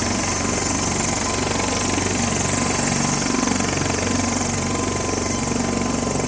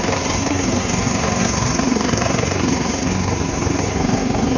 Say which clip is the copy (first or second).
second